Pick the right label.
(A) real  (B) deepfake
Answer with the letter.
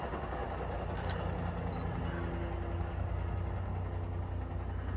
A